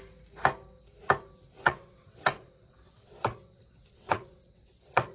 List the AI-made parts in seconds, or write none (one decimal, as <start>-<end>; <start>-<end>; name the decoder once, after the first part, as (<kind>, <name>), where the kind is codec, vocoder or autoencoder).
1.6-5.1 (vocoder, WaveNeXt)